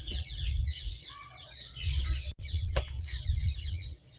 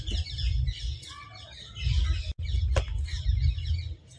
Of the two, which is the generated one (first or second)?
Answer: first